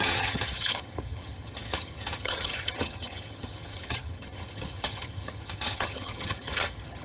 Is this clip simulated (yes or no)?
yes